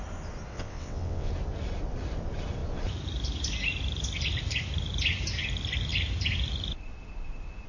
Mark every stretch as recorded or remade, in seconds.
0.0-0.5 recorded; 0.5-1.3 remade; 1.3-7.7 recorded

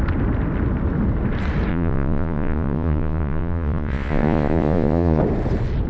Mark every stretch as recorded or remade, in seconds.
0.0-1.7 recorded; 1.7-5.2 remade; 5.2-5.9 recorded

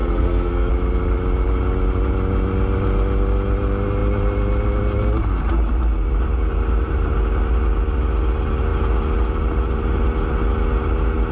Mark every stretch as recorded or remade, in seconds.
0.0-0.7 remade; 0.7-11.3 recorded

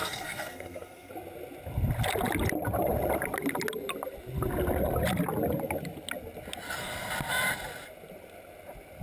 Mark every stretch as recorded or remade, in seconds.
0.0-1.1 remade; 1.1-9.0 recorded